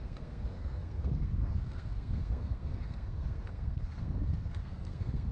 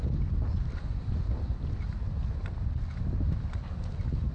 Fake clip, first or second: first